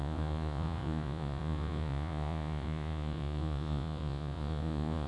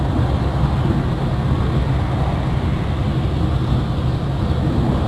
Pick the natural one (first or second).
second